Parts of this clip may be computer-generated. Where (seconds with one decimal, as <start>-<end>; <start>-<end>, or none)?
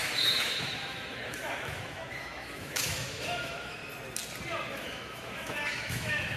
0.0-3.8; 4.7-6.4